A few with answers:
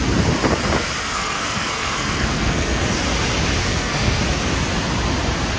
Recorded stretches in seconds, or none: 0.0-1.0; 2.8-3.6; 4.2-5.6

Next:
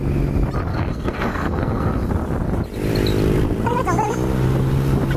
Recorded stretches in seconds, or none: 0.0-0.7; 2.1-5.2

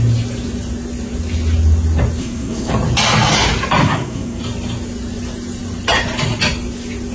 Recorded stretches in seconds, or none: 0.0-2.2; 2.7-3.8; 4.4-7.1

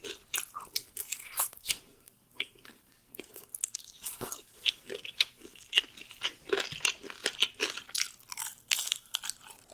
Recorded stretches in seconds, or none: 0.0-0.8; 5.8-8.6; 9.2-9.7

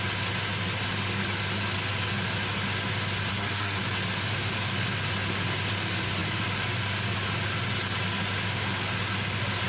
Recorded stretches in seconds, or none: 0.0-3.3; 3.8-9.7

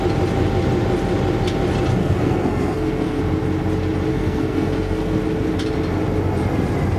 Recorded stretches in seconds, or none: 0.0-2.0; 3.2-4.1; 5.2-7.0